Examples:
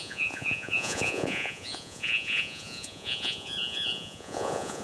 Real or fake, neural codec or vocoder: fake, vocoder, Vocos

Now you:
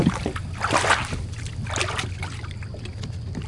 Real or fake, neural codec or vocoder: real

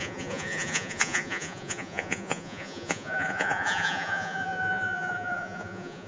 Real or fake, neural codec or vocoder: fake, vocoder, Vocos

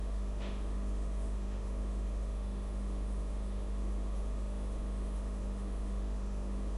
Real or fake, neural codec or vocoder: fake, autoencoder, DAC-VAE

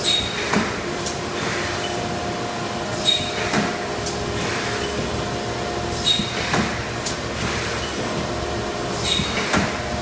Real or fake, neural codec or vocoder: real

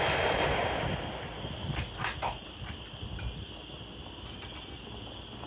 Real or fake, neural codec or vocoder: real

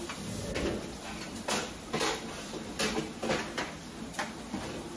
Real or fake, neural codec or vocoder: real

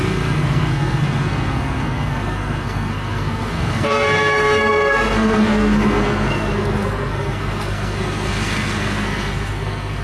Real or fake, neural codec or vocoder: fake, codec, SNAC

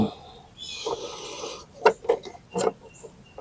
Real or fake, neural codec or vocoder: real